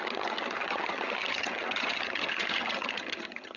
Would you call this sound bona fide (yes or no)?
no